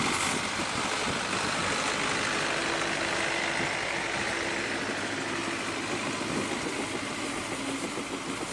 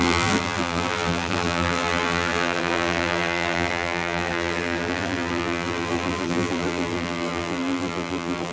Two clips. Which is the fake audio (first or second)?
second